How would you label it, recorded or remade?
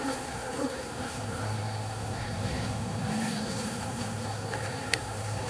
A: remade